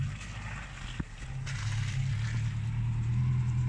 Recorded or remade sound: recorded